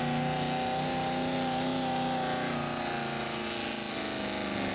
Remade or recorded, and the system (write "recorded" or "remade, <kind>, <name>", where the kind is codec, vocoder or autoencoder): recorded